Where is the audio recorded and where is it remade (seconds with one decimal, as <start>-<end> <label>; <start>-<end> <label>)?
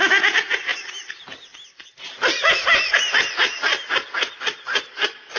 0.0-5.4 recorded